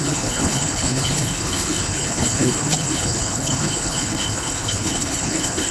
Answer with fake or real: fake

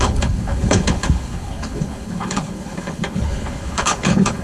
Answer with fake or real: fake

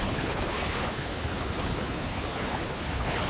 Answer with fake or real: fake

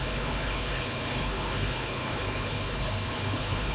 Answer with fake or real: fake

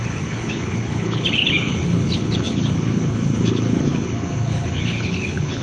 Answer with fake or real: fake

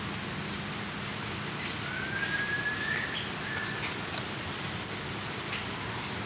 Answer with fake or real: real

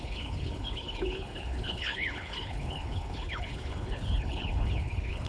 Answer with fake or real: fake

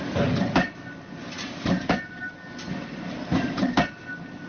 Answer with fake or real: real